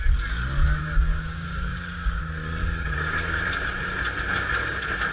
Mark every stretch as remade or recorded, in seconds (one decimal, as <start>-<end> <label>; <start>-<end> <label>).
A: 0.0-0.8 recorded; 0.8-2.2 remade; 2.2-2.6 recorded; 2.6-3.4 remade; 3.4-5.1 recorded